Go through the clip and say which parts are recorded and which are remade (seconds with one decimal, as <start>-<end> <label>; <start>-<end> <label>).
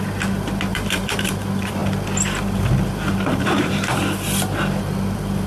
0.0-0.7 recorded; 0.7-1.3 remade; 1.3-3.3 recorded; 3.3-4.0 remade; 4.0-5.5 recorded